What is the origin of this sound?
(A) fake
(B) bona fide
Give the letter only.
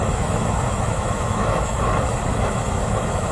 A